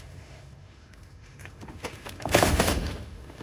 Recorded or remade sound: remade